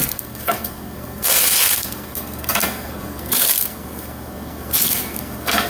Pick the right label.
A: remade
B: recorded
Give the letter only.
A